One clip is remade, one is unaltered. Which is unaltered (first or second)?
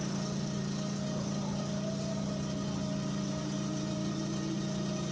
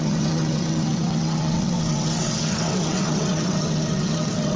first